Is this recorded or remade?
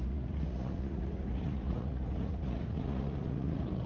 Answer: remade